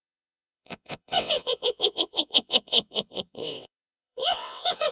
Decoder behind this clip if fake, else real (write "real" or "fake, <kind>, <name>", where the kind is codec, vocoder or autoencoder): fake, vocoder, WaveNeXt